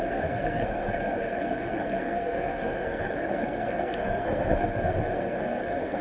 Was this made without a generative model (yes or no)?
no